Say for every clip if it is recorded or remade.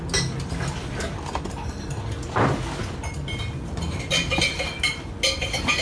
recorded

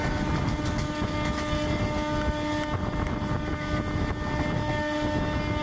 recorded